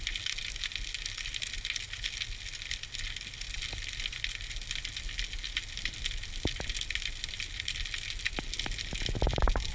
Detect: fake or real real